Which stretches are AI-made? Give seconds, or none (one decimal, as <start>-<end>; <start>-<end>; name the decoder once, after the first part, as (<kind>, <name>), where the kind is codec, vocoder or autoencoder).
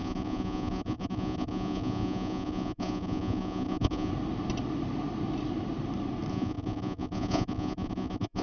0.0-4.1 (vocoder, Vocos); 6.3-8.4